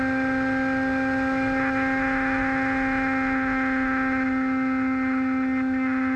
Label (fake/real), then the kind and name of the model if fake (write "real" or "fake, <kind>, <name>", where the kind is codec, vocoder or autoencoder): real